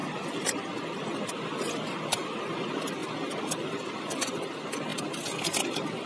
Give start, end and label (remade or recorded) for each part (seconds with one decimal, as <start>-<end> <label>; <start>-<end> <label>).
0.0-2.4 remade; 2.4-3.0 recorded; 3.0-4.3 remade; 4.3-6.1 recorded